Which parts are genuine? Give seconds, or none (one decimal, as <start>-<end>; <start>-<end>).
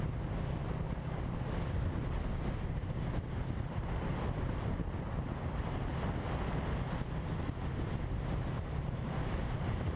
0.6-1.6; 2.8-3.4; 5.9-8.3